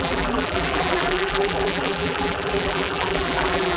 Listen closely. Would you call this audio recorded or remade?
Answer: remade